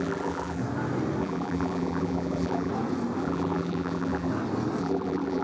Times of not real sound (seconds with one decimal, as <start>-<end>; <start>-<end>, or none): 0.0-0.6; 1.2-2.7; 3.2-4.3; 4.8-5.4